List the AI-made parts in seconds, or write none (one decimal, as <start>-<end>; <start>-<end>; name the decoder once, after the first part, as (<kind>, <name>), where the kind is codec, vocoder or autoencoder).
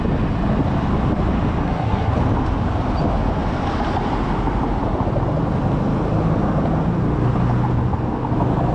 1.6-2.1 (codec, SNAC)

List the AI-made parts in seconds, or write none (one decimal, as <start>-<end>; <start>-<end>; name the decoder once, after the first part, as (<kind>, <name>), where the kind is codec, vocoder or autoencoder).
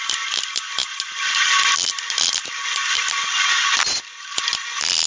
none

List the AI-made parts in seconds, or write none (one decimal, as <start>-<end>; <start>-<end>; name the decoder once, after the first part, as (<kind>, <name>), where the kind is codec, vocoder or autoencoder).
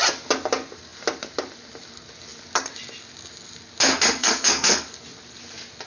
4.2-4.8 (codec, SNAC)